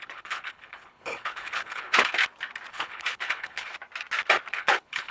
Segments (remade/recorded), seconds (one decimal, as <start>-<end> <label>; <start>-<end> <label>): 0.0-2.2 remade; 2.2-2.7 recorded; 2.7-3.7 remade; 3.7-4.5 recorded; 4.5-5.1 remade